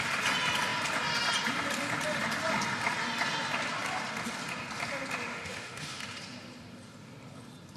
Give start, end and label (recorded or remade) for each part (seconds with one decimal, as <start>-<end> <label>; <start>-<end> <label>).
0.0-5.3 recorded; 5.3-6.0 remade; 6.0-7.8 recorded